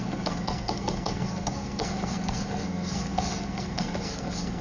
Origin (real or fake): fake